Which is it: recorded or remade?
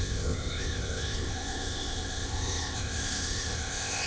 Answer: remade